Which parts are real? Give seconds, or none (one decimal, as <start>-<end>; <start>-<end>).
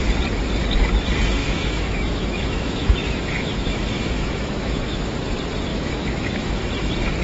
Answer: 0.0-1.4; 5.1-5.7; 6.6-7.2